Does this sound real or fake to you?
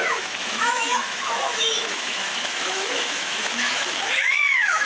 fake